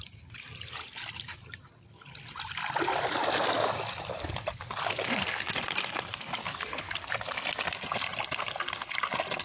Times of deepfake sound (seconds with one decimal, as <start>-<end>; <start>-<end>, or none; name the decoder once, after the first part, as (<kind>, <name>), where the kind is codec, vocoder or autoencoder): none